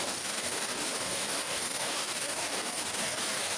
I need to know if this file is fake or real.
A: fake